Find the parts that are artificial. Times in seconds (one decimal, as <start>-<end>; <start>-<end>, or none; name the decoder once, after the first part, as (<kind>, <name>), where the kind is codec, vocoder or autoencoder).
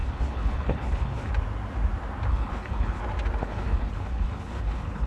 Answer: 0.0-1.3 (codec, HILCodec); 2.3-3.0; 3.4-5.1